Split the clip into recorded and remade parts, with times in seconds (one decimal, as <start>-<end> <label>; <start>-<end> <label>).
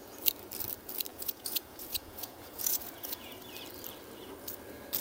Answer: 0.0-1.1 recorded; 1.1-3.4 remade; 3.4-5.0 recorded